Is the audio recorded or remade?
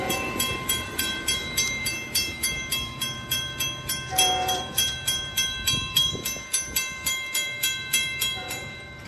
remade